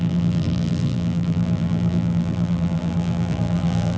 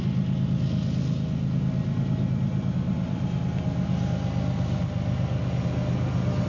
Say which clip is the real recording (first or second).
second